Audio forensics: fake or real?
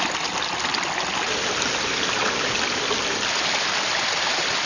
real